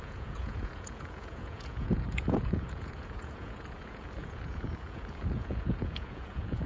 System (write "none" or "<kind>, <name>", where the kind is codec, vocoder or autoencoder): vocoder, Vocos